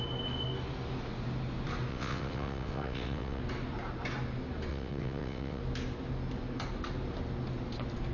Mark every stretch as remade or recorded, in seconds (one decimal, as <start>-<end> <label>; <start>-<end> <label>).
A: 0.0-1.9 recorded; 1.9-3.4 remade; 3.4-4.7 recorded; 4.7-5.6 remade; 5.6-8.1 recorded